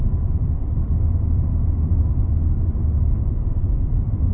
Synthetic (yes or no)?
yes